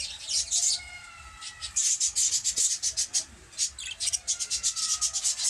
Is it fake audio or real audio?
real